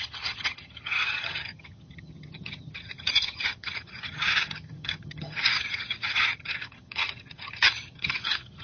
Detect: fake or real fake